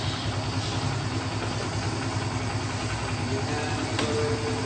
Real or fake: real